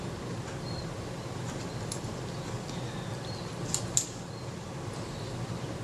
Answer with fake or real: real